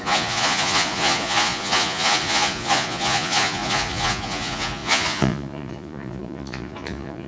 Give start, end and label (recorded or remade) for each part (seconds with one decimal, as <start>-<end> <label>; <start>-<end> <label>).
0.0-7.3 remade